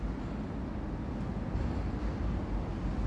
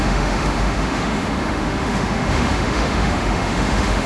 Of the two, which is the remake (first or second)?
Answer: second